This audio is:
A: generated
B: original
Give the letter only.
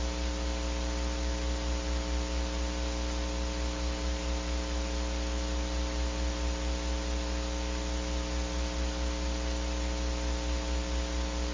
B